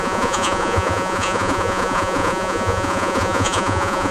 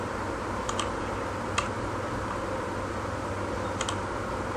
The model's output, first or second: first